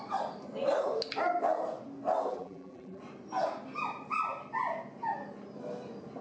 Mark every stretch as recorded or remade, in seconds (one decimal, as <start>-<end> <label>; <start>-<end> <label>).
0.0-2.3 recorded; 2.3-3.0 remade; 3.0-6.2 recorded